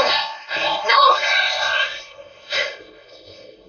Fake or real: fake